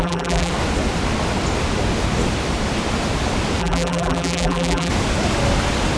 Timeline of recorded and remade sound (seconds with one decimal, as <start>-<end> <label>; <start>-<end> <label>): 0.0-0.5 remade; 0.5-3.6 recorded; 3.6-4.9 remade; 4.9-6.0 recorded